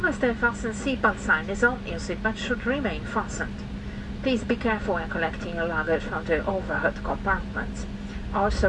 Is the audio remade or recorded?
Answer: recorded